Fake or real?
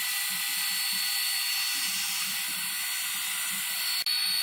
real